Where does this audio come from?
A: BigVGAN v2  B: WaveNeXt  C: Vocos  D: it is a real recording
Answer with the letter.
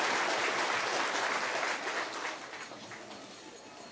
D